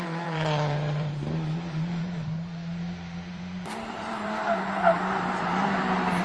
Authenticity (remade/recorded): remade